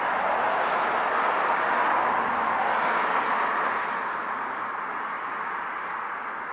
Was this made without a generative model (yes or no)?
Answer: yes